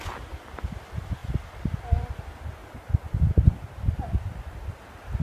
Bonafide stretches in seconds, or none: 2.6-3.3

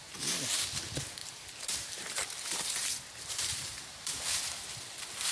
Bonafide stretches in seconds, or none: 0.0-1.2; 4.2-5.3

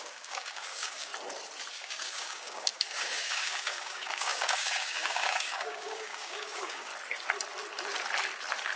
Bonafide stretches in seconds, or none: 1.1-1.7; 6.9-8.8